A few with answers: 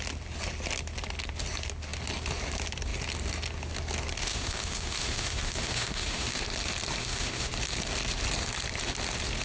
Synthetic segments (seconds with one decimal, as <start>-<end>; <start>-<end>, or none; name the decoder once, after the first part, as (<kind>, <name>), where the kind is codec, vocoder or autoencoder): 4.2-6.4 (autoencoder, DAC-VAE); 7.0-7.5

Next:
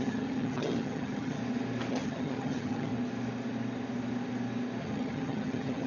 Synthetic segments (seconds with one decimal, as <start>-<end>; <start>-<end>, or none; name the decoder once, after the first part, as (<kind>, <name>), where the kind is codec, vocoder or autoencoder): 0.0-1.4 (vocoder, HiFi-GAN); 1.9-2.9; 4.8-5.9

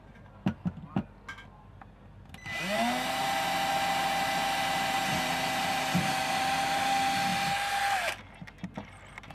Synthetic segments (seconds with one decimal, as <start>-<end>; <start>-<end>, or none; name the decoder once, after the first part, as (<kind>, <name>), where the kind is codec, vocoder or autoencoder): none